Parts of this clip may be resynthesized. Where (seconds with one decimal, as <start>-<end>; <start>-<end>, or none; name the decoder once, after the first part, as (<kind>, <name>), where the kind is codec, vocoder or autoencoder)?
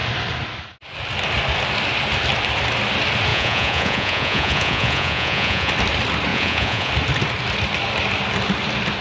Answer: 3.3-5.7 (vocoder, Vocos); 6.3-6.9